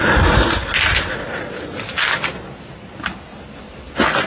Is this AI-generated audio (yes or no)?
no